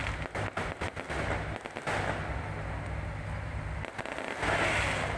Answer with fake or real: real